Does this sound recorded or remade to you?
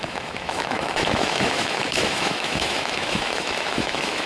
remade